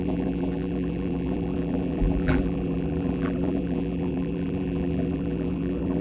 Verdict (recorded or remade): remade